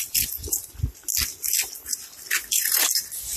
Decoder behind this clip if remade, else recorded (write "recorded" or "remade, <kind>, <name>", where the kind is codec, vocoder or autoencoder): recorded